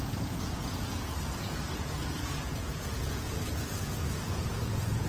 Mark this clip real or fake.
fake